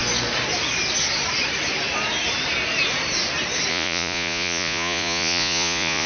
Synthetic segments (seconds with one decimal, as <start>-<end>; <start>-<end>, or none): 3.7-6.1

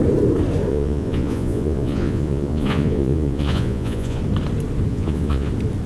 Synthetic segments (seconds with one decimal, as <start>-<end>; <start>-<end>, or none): 0.7-4.2; 4.9-5.5